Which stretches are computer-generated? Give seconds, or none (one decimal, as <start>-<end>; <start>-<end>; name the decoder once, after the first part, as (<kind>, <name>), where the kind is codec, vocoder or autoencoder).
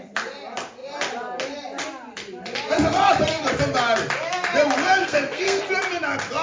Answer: 5.0-5.6 (codec, SNAC)